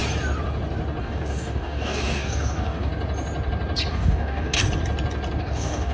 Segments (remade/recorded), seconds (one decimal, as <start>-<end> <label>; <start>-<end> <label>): 0.0-1.0 recorded; 1.0-2.9 remade; 2.9-3.9 recorded; 3.9-4.6 remade; 4.6-5.4 recorded; 5.4-5.9 remade